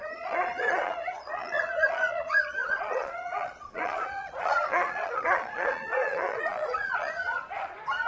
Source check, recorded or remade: remade